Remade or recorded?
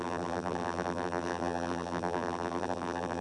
remade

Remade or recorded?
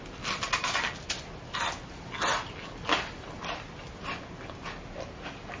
recorded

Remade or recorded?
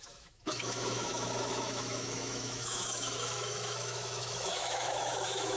remade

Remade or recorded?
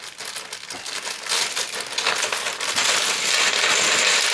recorded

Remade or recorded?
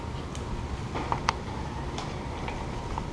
recorded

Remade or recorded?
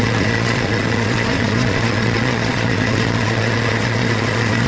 remade